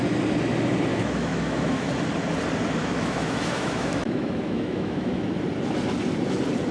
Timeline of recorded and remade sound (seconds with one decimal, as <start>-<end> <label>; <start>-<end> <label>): 0.0-0.9 recorded; 0.9-1.9 remade; 1.9-2.8 recorded; 2.8-5.2 remade; 5.2-6.7 recorded